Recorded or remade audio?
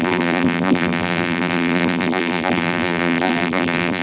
remade